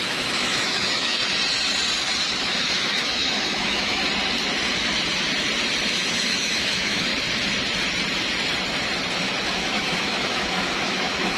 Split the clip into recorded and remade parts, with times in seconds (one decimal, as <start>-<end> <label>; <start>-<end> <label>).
0.0-1.2 remade; 1.2-2.4 recorded; 2.4-4.0 remade; 4.0-5.9 recorded; 5.9-7.1 remade; 7.1-9.5 recorded; 9.5-11.4 remade